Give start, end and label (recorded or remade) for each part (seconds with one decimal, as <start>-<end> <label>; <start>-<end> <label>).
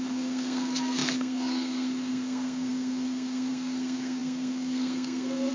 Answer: 0.0-5.5 remade